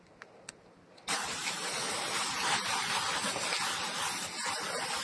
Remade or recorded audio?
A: recorded